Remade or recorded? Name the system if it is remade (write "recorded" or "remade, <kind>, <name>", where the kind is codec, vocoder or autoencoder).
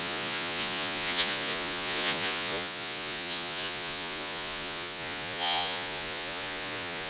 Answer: remade, vocoder, Vocos